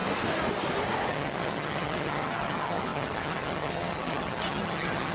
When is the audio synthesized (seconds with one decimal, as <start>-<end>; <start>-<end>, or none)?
1.1-5.1